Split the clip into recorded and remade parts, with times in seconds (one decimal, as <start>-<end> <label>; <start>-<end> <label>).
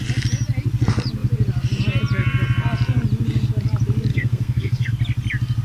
0.0-4.1 recorded; 4.1-4.9 remade; 4.9-5.6 recorded